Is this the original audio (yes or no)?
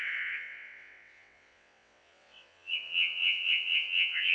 no